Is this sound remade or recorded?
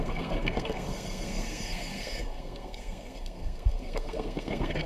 remade